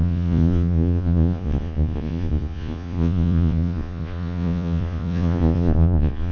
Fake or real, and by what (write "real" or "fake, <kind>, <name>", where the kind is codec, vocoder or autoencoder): fake, vocoder, Vocos